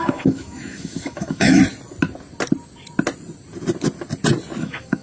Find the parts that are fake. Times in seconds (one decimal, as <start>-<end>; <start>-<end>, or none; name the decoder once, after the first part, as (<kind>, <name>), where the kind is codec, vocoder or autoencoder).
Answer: 0.0-1.6 (autoencoder, DAC-VAE); 4.6-5.0